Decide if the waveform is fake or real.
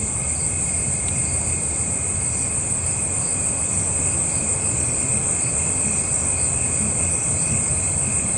real